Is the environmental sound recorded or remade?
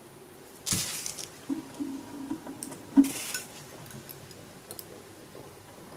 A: recorded